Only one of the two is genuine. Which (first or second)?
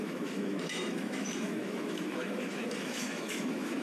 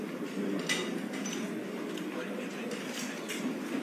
second